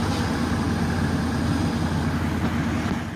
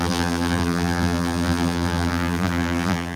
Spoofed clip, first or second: second